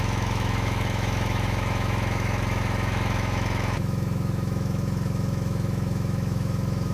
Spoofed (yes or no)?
yes